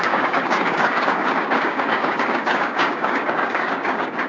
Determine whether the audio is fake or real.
fake